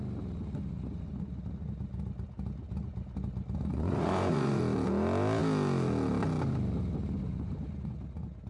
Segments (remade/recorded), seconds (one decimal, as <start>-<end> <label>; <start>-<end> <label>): 0.0-3.7 recorded; 3.7-4.6 remade; 4.6-8.5 recorded